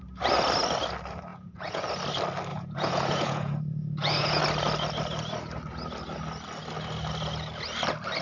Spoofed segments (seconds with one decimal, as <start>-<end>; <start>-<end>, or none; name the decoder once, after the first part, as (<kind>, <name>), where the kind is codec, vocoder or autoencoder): 1.3-1.8 (vocoder, Vocos); 2.5-4.4